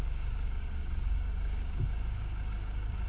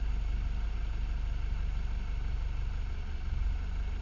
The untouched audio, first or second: second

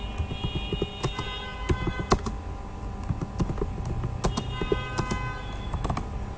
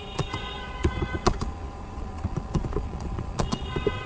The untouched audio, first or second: first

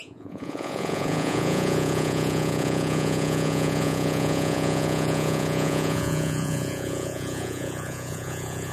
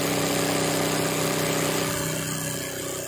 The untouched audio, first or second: second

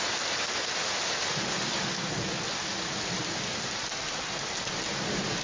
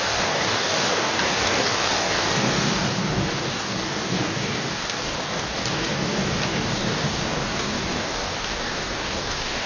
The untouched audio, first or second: first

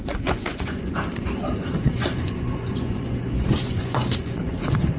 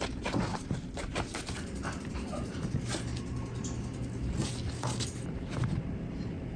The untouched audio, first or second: second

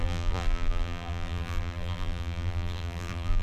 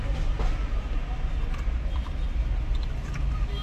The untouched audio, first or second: second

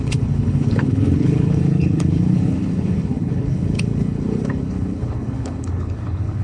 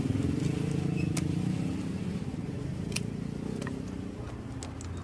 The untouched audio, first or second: second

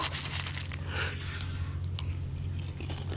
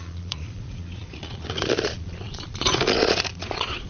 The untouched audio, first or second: first